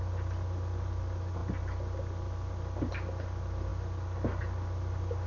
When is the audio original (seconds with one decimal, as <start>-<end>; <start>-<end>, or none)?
0.0-5.3